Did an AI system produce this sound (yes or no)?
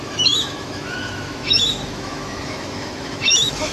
yes